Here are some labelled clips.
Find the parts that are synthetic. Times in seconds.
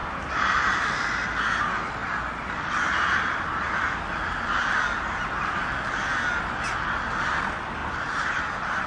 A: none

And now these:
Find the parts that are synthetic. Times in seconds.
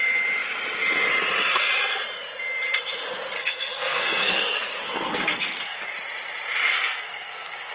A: 3.4-5.8 (codec, SNAC); 6.7-7.7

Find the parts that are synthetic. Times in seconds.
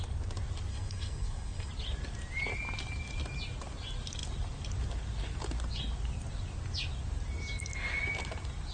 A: 0.7-1.7 (codec, SNAC)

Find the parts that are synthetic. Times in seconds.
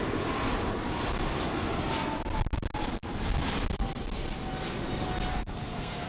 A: 5.3-6.1 (codec, SNAC)